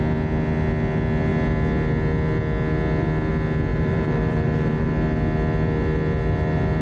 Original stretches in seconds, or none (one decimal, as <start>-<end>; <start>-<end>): 0.0-3.7; 4.9-6.8

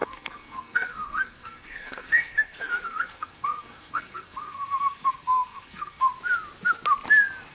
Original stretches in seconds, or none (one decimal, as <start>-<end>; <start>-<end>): 6.1-7.5

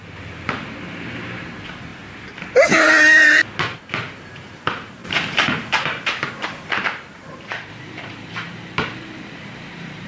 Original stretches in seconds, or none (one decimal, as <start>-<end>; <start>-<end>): 1.9-4.3

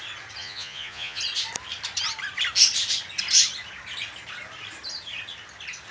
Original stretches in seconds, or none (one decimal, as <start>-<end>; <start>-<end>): 0.0-0.4; 1.2-5.9